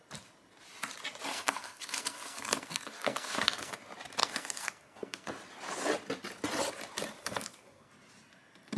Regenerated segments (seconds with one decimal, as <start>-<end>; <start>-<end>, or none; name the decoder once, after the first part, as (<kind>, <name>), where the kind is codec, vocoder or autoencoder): 1.3-3.8 (codec, SNAC); 4.2-5.3; 7.2-7.9